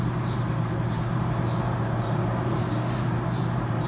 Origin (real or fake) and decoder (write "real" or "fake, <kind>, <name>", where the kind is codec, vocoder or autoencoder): fake, vocoder, BigVGAN v2